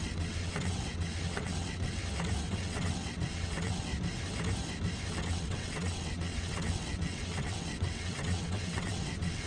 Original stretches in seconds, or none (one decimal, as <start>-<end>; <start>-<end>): 2.0-2.5; 3.9-5.1